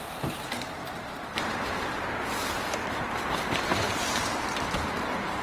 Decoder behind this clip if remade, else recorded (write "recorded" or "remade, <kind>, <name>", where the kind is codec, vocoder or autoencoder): remade, vocoder, BigVGAN v2